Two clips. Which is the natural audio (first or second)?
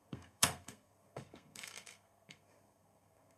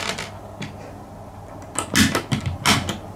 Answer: second